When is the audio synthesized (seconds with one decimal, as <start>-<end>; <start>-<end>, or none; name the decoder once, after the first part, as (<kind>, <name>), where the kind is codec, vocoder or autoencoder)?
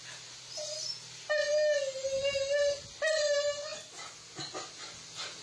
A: none